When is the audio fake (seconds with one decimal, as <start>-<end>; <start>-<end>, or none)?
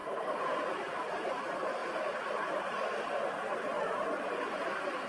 1.3-5.1